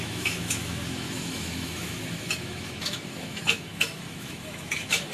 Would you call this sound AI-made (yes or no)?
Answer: yes